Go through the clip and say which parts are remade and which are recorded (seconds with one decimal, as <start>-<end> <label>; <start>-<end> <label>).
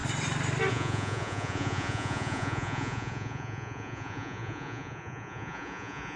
0.0-0.7 recorded; 0.7-6.2 remade